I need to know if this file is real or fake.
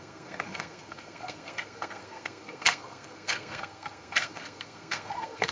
fake